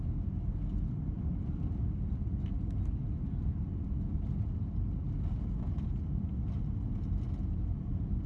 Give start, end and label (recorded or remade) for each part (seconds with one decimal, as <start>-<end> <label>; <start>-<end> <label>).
0.0-3.5 recorded; 3.5-5.9 remade; 5.9-8.3 recorded